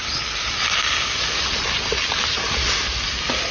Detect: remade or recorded recorded